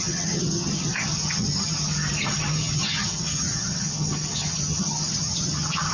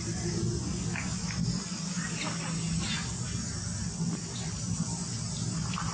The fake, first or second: first